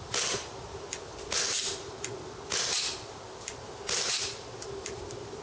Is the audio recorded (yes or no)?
yes